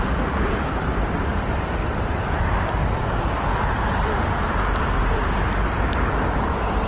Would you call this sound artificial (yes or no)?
yes